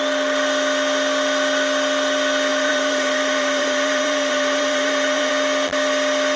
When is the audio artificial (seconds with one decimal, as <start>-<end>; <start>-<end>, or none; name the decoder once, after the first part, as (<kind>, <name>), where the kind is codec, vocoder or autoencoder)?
2.5-5.3 (vocoder, BigVGAN v2)

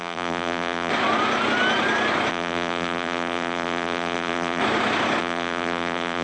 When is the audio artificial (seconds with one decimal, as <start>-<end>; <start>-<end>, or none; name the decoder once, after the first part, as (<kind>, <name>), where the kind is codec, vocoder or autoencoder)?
0.0-0.9 (vocoder, BigVGAN v2); 2.3-4.6; 5.2-6.2

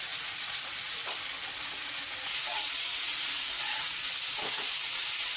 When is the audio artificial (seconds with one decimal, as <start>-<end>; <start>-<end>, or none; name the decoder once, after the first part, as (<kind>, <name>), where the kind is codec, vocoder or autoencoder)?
0.0-1.0 (vocoder, Vocos); 1.6-4.0